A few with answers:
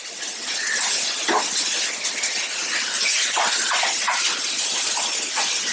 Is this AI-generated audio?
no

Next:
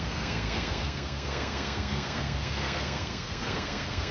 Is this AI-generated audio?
yes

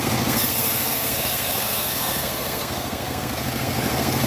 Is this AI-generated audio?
yes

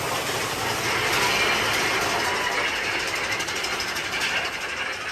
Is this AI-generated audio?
no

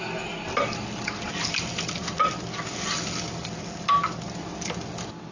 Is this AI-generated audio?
no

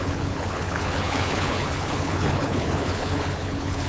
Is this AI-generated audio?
yes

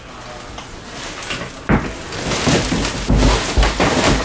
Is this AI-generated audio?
no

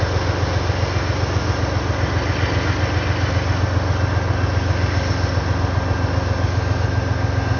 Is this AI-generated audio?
no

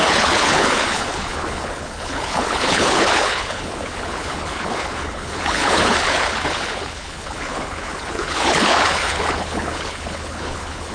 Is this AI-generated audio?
yes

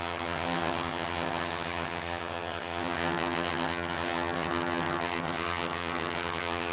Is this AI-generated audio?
yes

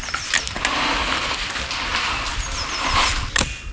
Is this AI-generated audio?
no